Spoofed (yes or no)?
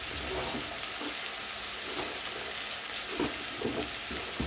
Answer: no